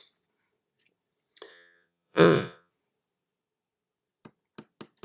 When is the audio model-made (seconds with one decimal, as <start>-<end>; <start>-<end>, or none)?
1.5-2.7